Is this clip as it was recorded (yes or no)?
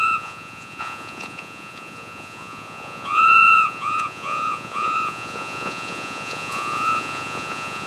no